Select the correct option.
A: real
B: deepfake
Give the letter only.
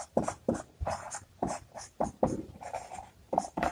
B